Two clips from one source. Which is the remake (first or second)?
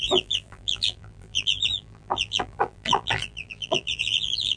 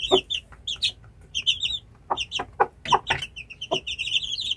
first